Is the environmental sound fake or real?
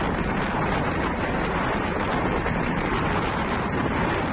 real